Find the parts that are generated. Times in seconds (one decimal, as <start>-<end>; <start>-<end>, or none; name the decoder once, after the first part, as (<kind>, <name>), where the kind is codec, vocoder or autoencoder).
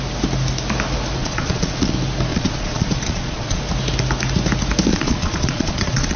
1.2-1.9 (vocoder, Vocos); 2.3-3.6; 4.9-6.2